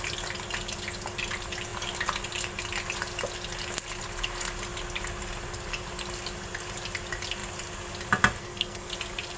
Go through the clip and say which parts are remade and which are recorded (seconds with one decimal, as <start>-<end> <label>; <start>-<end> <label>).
0.0-8.4 recorded; 8.4-8.9 remade; 8.9-9.4 recorded